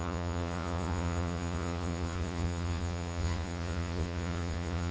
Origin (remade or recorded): remade